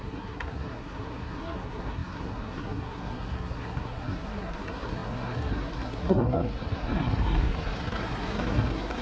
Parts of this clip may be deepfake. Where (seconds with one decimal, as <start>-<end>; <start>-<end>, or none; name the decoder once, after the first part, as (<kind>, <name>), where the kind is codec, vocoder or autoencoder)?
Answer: 0.0-9.0 (codec, SNAC)

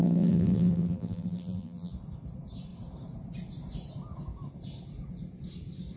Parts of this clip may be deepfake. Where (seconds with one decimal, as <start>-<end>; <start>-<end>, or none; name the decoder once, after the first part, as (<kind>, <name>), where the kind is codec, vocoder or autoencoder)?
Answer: 0.0-1.9 (vocoder, BigVGAN v2)

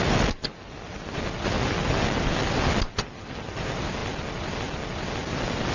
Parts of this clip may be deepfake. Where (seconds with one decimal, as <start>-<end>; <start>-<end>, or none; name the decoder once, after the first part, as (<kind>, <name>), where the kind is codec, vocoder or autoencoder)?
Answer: none

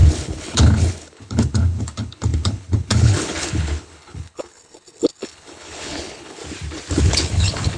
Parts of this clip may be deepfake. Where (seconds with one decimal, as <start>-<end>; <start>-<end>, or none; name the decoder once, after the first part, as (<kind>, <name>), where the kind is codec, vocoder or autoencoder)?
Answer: 0.0-6.4 (codec, HILCodec); 7.0-7.8